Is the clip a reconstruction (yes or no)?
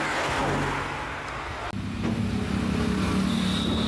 no